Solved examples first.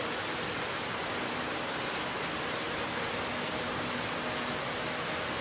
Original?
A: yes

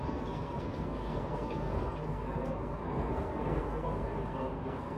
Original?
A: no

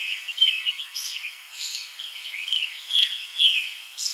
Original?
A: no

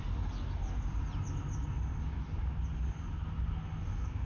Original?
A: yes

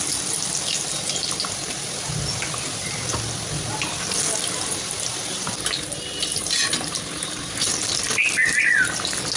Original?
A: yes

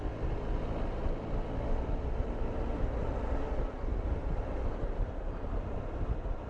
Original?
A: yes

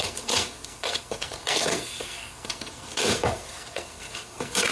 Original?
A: no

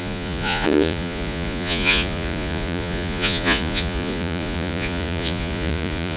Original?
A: no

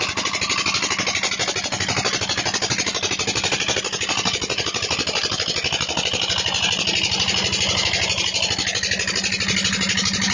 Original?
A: yes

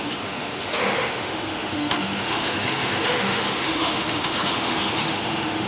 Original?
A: no